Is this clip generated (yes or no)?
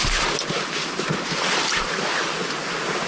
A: no